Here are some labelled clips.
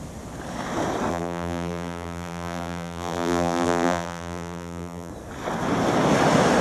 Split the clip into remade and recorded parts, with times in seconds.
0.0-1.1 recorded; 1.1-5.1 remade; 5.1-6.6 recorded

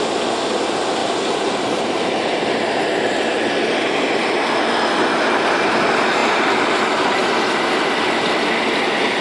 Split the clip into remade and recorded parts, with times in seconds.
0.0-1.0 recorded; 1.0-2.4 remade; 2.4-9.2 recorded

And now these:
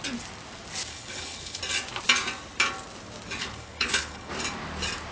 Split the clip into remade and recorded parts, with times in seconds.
0.0-0.9 recorded; 0.9-1.6 remade; 1.6-3.4 recorded; 3.4-4.3 remade; 4.3-5.1 recorded

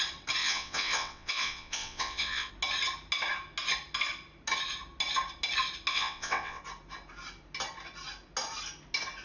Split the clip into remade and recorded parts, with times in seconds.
0.0-0.4 recorded; 0.4-2.5 remade; 2.5-5.9 recorded; 5.9-6.6 remade; 6.6-9.2 recorded

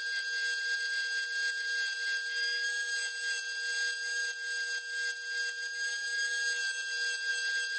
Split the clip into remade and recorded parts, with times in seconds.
0.0-7.8 recorded

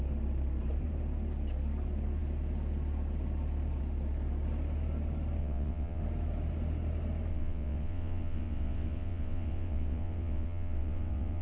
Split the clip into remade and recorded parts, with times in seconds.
0.0-5.4 recorded; 5.4-6.0 remade; 6.0-7.3 recorded; 7.3-11.4 remade

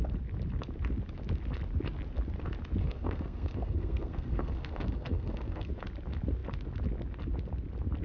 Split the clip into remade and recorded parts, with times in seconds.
0.0-2.8 recorded; 2.8-5.7 remade; 5.7-8.0 recorded

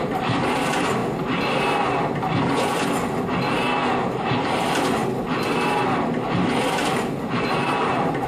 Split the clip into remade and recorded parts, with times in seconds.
0.0-1.0 remade; 1.0-4.0 recorded; 4.0-5.0 remade; 5.0-7.5 recorded; 7.5-8.3 remade